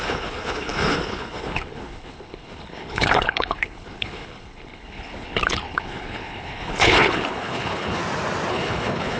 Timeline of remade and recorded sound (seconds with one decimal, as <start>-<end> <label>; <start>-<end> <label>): 0.0-8.0 remade; 8.0-8.5 recorded; 8.5-9.2 remade